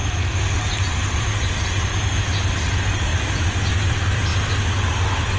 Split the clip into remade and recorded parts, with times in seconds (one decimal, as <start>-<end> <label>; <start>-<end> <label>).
0.0-0.6 recorded; 0.6-3.1 remade; 3.1-3.7 recorded; 3.7-4.3 remade; 4.3-5.4 recorded